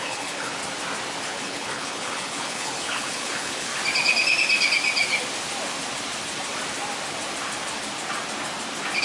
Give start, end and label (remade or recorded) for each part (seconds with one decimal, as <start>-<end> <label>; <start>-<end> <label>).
0.0-0.6 remade; 0.6-1.2 recorded; 1.2-3.7 remade; 3.7-9.0 recorded